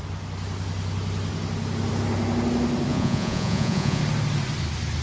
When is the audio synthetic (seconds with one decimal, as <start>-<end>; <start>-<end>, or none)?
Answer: 2.9-4.0